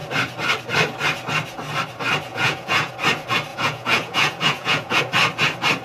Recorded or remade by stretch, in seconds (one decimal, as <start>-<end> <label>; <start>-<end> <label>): 0.0-2.3 recorded; 2.3-2.9 remade; 2.9-3.5 recorded; 3.5-5.0 remade; 5.0-5.8 recorded